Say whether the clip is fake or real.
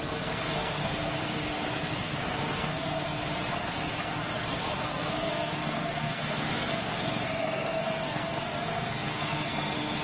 fake